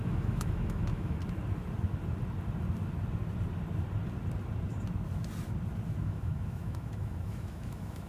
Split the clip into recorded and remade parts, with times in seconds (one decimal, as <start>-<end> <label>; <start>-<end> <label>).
0.0-1.2 remade; 1.2-6.0 recorded; 6.0-8.1 remade